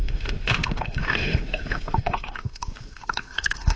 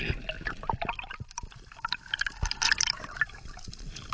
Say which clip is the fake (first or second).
first